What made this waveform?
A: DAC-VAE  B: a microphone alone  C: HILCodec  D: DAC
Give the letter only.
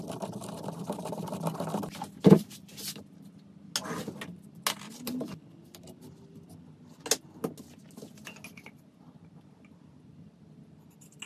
B